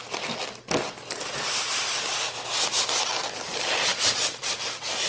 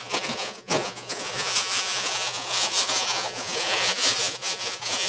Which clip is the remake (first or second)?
second